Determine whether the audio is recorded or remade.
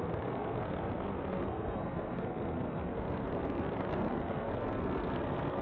remade